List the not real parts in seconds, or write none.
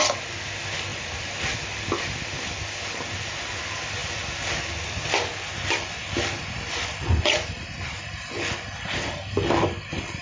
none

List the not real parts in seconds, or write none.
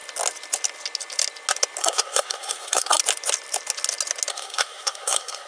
1.8-3.0 (codec, SNAC); 4.3-5.5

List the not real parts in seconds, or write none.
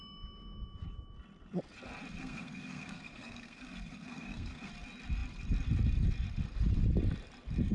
2.2-4.7 (codec, SNAC)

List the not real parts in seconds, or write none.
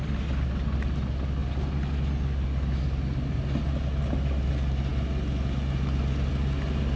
none